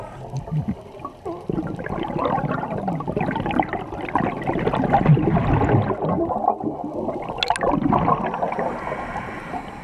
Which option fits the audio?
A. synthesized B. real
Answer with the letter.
B